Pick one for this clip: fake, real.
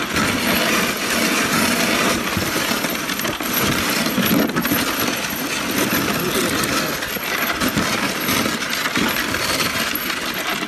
real